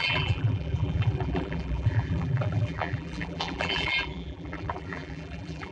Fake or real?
fake